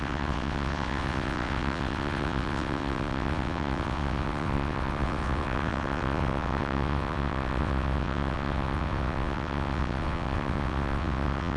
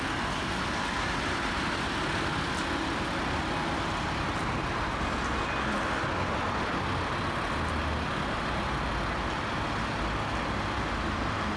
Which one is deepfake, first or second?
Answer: first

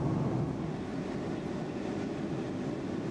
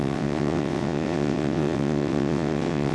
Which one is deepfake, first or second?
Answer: second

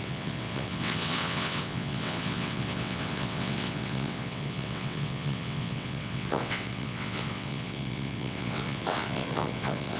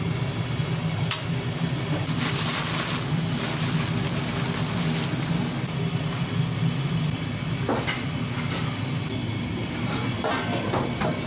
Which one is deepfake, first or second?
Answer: first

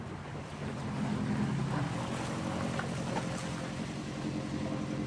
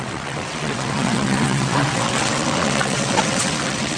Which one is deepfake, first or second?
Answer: second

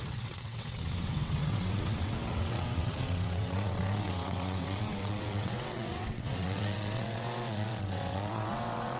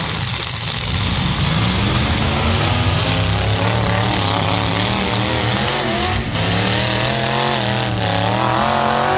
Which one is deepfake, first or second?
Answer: first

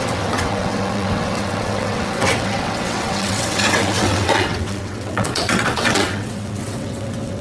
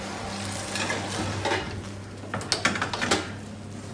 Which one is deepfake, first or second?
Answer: first